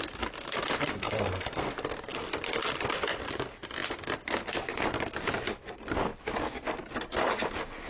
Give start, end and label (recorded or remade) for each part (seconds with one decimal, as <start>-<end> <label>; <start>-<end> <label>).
0.0-0.9 recorded; 0.9-1.7 remade; 1.7-7.9 recorded